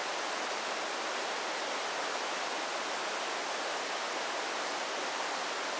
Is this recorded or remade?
recorded